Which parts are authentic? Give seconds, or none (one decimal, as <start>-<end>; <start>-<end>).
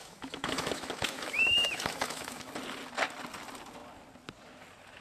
2.5-5.0